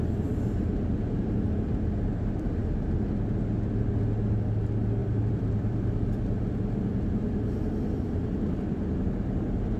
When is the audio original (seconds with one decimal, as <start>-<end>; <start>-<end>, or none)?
0.0-5.0; 6.4-9.8